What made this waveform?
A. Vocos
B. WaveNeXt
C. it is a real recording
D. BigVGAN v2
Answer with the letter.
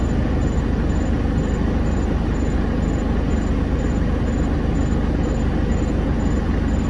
C